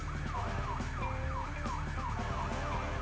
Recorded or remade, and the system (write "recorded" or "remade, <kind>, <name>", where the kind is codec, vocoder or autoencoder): recorded